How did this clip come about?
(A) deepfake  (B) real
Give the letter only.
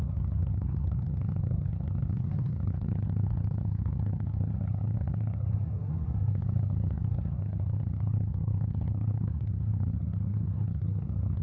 A